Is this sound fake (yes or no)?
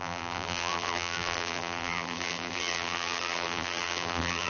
yes